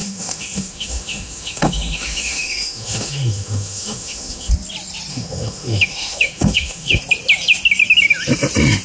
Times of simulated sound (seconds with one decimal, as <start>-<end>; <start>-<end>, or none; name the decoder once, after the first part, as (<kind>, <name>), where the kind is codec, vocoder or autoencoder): 0.0-4.5 (autoencoder, DAC-VAE); 5.1-7.0

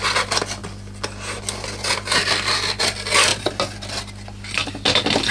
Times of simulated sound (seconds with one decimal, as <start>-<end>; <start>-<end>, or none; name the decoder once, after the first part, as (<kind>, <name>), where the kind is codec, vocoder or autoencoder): none